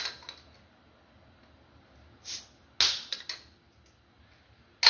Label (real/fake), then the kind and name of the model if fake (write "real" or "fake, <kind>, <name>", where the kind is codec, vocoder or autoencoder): real